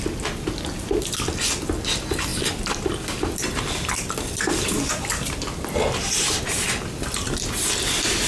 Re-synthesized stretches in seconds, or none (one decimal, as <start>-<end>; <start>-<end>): 2.3-6.4